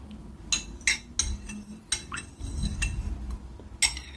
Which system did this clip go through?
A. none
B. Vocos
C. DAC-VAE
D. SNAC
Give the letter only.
A